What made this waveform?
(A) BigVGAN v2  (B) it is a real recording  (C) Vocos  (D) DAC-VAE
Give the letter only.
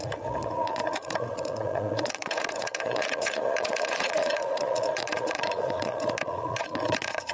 C